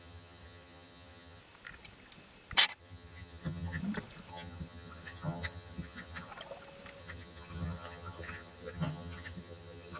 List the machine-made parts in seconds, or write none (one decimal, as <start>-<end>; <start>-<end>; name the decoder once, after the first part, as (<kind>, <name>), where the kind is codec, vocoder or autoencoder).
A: 0.0-1.4 (vocoder, HiFi-GAN); 2.8-3.8; 4.3-6.3; 7.0-10.0